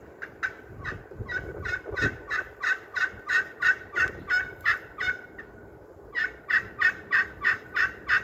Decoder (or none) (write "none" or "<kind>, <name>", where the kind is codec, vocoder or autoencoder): none